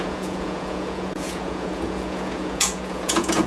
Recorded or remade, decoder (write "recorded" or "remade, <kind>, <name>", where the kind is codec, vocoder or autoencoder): remade, vocoder, Vocos